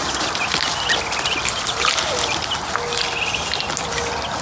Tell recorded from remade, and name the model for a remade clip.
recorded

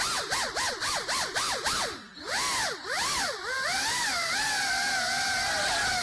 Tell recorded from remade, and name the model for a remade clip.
recorded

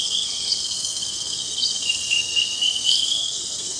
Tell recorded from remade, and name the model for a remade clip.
remade, codec, SNAC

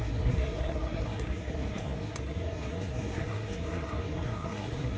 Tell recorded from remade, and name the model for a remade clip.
remade, codec, SNAC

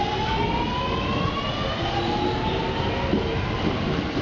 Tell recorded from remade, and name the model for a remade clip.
recorded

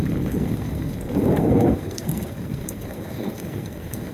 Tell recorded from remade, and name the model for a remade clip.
remade, codec, SNAC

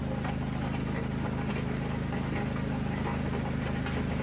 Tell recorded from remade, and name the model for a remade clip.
recorded